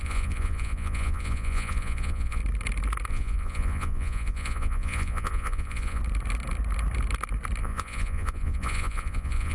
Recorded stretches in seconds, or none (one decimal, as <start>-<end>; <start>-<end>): 2.4-3.1; 6.0-7.6